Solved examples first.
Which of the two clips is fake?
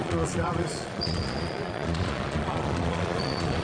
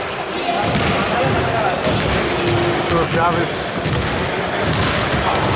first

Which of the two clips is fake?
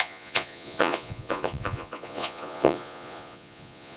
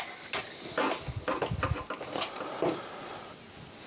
first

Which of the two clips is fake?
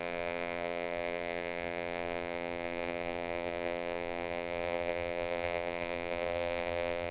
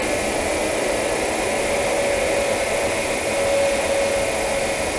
first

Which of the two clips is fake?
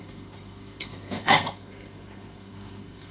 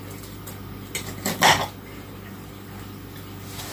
first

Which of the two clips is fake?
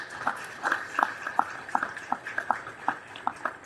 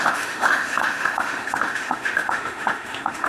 second